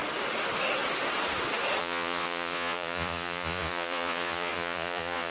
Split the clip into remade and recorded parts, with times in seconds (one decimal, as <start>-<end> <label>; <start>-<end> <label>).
0.0-1.8 recorded; 1.8-5.3 remade

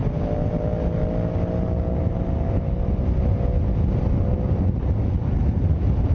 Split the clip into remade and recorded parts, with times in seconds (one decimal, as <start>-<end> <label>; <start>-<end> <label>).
0.0-6.1 recorded

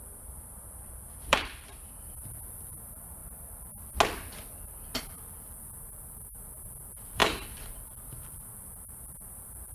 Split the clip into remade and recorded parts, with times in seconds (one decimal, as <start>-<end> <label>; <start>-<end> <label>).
0.0-3.2 remade; 3.2-5.0 recorded; 5.0-9.7 remade

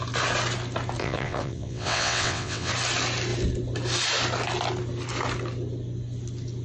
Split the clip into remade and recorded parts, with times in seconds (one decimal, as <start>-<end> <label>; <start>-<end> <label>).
0.0-1.0 recorded; 1.0-2.7 remade; 2.7-6.6 recorded

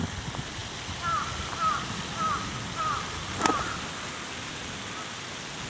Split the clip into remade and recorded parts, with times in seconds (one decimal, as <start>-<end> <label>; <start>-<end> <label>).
0.0-5.7 recorded

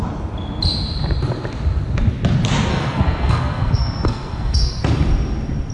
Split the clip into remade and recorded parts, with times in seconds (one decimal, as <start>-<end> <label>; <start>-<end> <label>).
0.0-2.7 recorded; 2.7-4.8 remade; 4.8-5.7 recorded

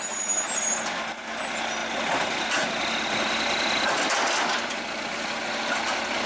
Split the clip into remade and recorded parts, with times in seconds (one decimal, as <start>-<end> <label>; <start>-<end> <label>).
0.0-6.3 recorded

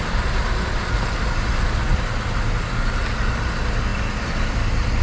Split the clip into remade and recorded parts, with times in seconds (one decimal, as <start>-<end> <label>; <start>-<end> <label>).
0.0-5.0 recorded